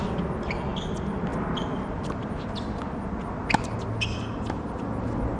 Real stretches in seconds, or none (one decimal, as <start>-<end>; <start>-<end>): 0.0-5.4

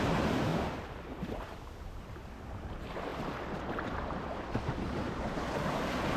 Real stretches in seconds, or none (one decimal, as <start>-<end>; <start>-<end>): 0.0-0.5; 2.7-3.1; 5.7-6.2

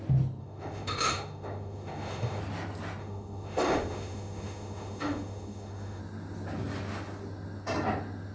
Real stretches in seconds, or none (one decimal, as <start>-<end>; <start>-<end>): 0.0-0.4; 2.4-3.0; 6.0-8.3

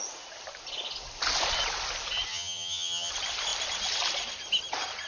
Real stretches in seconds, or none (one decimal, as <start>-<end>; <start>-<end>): 0.0-2.3; 3.1-5.1